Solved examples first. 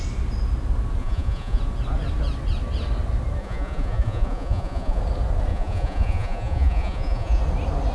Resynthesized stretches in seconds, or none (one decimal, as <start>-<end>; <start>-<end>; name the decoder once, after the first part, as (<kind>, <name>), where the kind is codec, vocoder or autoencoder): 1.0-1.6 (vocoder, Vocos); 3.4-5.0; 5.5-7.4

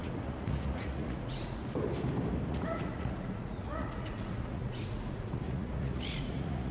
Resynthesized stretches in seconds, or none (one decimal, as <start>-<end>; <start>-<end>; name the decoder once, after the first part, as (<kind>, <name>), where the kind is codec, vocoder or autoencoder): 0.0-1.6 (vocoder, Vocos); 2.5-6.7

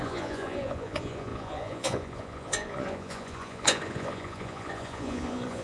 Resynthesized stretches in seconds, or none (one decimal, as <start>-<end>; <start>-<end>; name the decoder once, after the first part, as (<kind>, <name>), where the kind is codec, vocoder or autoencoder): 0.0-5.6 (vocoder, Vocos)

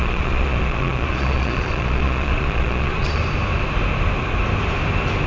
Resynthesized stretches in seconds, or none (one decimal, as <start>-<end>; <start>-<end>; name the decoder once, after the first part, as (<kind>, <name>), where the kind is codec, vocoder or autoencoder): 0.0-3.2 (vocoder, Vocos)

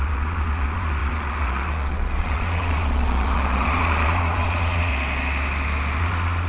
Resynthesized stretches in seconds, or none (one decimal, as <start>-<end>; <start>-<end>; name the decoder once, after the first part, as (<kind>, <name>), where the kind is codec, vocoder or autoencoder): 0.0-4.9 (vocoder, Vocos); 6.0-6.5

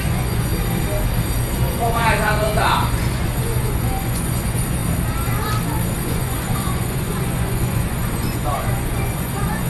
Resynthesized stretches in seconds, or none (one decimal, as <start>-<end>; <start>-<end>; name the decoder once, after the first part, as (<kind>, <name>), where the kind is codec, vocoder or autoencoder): 0.0-0.5 (vocoder, Vocos); 1.4-4.8; 6.0-9.7

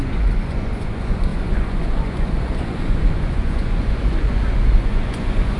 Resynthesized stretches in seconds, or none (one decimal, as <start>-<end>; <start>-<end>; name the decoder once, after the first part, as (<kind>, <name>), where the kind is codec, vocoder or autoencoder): 0.0-5.6 (vocoder, Vocos)

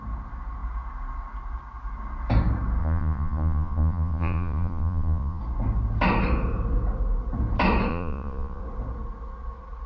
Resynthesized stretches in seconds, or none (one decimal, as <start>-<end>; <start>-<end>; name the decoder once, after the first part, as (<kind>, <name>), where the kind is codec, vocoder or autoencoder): 2.8-5.4 (vocoder, Vocos); 7.9-8.6